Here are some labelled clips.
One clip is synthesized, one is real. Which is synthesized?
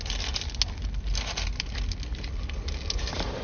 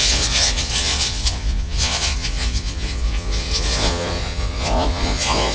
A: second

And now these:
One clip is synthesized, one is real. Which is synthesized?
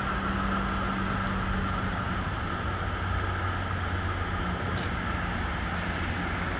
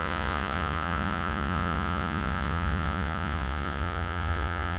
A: second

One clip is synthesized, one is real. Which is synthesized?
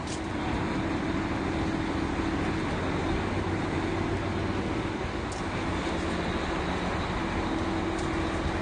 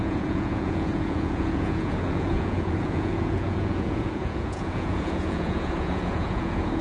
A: second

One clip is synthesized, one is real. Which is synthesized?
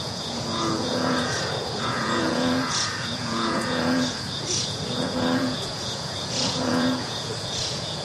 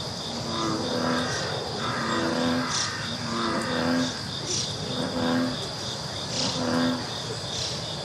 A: first